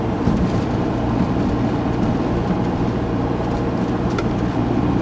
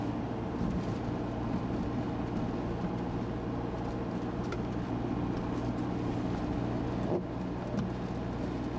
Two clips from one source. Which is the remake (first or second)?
first